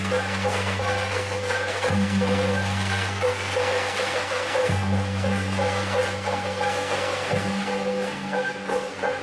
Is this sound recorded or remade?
remade